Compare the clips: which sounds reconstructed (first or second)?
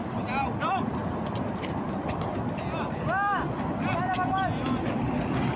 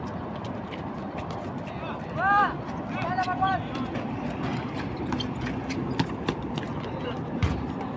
second